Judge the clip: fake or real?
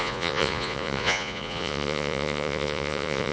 fake